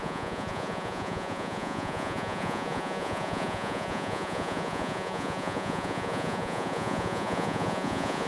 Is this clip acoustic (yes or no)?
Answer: no